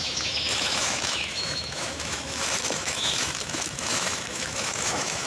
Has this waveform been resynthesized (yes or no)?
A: yes